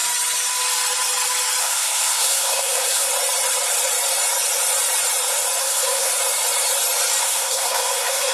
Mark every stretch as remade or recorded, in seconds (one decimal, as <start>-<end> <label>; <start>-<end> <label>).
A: 0.0-1.6 recorded; 1.6-3.1 remade; 3.1-5.6 recorded; 5.6-6.1 remade; 6.1-7.2 recorded; 7.2-8.3 remade